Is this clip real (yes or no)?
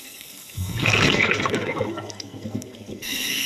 no